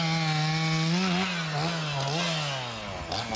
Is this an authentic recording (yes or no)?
yes